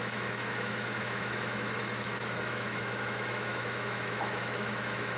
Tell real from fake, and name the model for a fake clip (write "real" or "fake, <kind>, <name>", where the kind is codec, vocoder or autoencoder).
fake, autoencoder, DAC-VAE